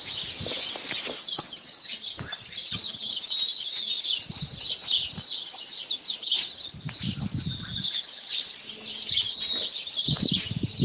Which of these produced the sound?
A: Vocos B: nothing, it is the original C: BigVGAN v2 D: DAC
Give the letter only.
B